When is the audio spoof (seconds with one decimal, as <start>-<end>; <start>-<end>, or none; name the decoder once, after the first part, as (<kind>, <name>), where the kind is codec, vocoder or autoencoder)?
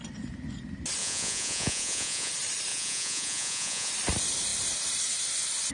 1.0-2.3 (vocoder, Vocos); 2.7-3.9